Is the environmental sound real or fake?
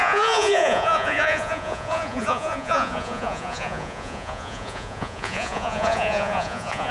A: fake